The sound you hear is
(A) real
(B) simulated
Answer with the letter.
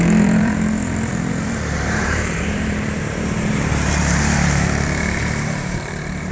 B